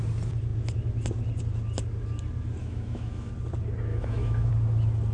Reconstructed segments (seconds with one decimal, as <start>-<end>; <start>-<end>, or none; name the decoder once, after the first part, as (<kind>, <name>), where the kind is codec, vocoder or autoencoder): 2.6-3.3 (autoencoder, DAC-VAE); 3.9-4.5